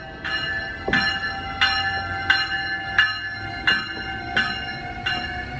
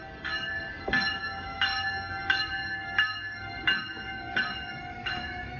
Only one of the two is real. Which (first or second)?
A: first